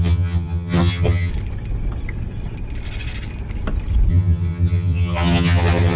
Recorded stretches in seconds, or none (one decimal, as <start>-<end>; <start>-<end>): 1.3-4.1